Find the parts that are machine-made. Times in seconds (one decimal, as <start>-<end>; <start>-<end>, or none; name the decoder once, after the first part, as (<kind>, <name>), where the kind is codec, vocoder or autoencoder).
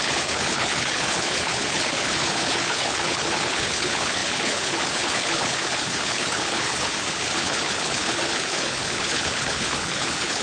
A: 0.0-10.4 (codec, HILCodec)